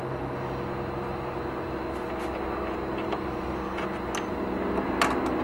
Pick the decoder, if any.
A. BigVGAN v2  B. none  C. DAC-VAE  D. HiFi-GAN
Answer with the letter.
B